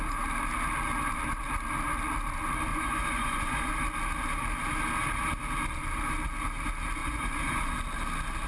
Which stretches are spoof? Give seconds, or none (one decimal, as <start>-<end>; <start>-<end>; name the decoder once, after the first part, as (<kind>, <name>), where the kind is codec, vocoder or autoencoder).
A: 2.7-3.7 (vocoder, Vocos); 7.0-7.7